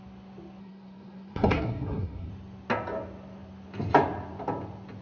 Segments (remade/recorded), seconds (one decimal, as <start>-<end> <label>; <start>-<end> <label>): 0.0-0.6 recorded; 0.6-2.3 remade; 2.3-5.0 recorded